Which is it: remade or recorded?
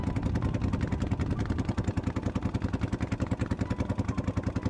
recorded